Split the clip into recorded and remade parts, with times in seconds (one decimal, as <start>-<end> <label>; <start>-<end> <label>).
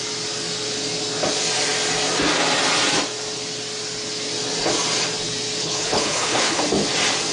0.0-5.6 recorded; 5.6-6.6 remade; 6.6-7.3 recorded